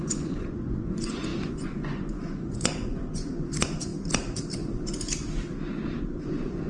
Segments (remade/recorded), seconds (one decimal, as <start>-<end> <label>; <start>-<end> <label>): 0.0-3.9 remade; 3.9-6.2 recorded; 6.2-6.7 remade